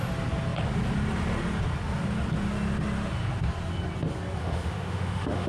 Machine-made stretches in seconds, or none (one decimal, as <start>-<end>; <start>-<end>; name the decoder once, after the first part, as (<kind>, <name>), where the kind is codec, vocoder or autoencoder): 4.4-5.5 (autoencoder, DAC-VAE)